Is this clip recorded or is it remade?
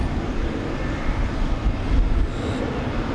recorded